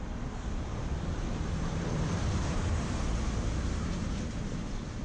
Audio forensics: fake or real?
fake